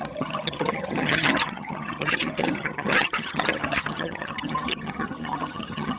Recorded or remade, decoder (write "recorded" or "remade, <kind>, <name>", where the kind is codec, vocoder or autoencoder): remade, vocoder, HiFi-GAN